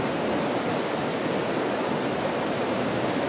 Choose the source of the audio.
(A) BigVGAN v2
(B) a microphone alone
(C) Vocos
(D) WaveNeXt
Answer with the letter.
B